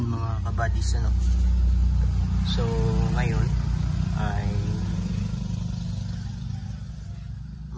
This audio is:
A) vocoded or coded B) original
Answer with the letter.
B